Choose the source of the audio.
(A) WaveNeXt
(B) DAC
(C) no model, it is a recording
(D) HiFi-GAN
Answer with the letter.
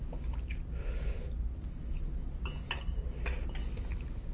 C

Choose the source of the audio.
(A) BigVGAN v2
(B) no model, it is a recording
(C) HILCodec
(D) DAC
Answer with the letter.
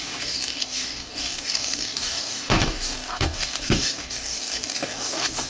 D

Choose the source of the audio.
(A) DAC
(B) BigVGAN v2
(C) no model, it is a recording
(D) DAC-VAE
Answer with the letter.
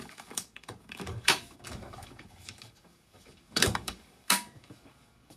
A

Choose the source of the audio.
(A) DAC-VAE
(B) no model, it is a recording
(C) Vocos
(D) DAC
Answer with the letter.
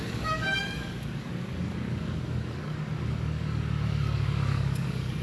D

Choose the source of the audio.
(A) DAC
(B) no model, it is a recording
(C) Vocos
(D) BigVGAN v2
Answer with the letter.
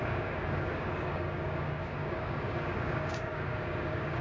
A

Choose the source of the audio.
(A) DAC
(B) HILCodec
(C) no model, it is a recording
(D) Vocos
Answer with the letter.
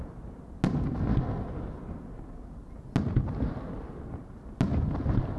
C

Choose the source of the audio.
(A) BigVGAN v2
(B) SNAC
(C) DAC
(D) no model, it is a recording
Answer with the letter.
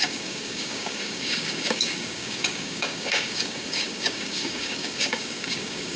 C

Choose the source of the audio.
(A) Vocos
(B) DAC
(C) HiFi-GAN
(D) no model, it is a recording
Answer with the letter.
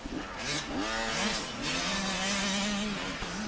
D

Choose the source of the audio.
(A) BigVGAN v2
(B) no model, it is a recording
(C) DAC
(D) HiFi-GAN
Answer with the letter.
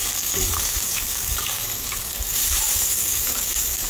C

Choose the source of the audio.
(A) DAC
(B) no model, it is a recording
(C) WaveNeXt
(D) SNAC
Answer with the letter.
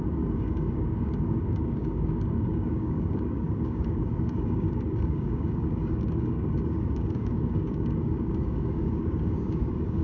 A